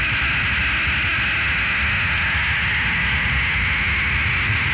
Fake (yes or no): no